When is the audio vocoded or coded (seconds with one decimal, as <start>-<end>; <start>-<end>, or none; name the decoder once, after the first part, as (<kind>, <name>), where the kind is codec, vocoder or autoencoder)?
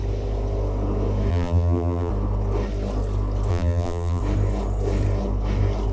1.3-2.1 (vocoder, BigVGAN v2); 3.5-4.2